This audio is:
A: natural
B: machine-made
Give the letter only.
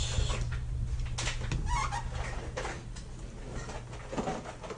A